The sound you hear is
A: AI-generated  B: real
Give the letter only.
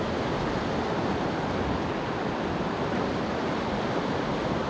B